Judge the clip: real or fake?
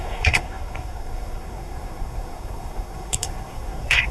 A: fake